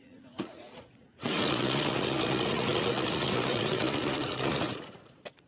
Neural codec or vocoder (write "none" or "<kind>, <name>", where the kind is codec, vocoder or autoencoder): vocoder, Vocos